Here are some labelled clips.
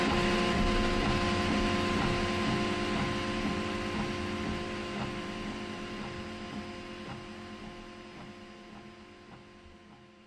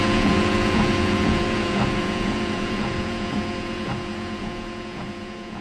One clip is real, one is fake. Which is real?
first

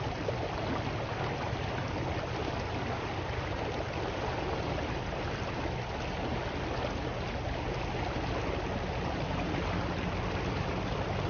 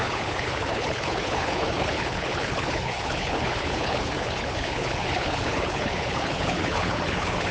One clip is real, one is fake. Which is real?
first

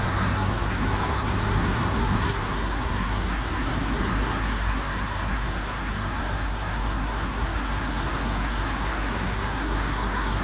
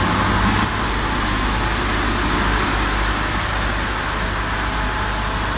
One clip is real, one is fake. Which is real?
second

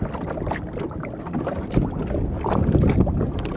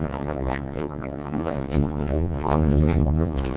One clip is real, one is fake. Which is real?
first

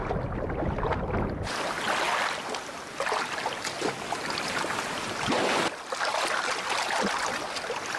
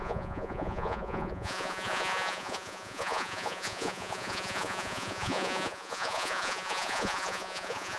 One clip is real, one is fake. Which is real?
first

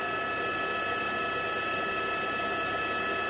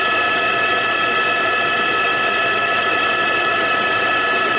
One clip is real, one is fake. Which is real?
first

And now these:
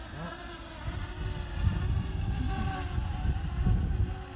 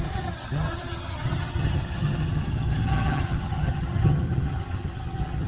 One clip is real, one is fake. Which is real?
first